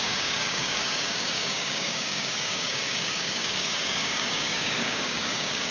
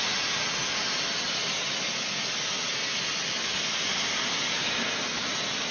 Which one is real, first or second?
second